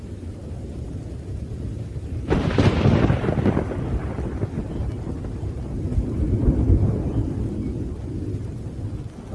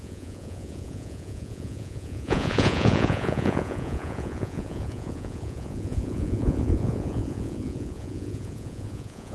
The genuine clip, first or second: first